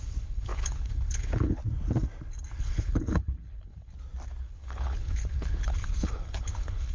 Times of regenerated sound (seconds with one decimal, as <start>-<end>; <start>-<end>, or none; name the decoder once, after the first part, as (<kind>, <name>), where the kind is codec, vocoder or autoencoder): 0.0-1.6 (codec, HILCodec); 2.6-3.9; 4.4-6.9

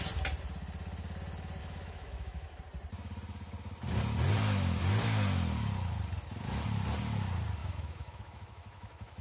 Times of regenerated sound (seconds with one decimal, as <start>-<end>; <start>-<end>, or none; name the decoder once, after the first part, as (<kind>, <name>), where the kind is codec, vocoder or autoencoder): 1.6-2.6 (autoencoder, DAC-VAE); 7.6-9.2